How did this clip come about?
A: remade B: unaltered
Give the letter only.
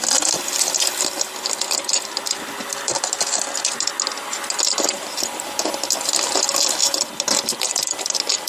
B